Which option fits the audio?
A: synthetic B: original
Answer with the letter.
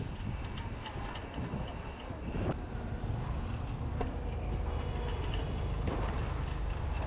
B